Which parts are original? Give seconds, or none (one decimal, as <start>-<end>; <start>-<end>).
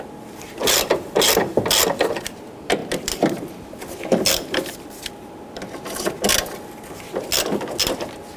0.0-0.6; 1.7-2.8; 5.6-8.4